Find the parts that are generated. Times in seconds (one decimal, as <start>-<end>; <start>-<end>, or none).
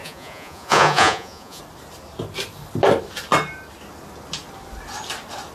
0.0-1.6